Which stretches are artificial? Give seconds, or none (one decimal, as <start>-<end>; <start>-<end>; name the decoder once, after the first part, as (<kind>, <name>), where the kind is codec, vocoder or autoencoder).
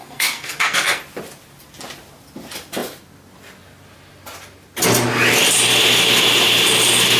0.0-1.0 (codec, SNAC)